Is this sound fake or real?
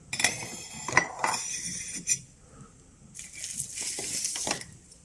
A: real